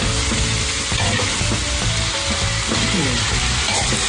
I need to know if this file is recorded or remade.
recorded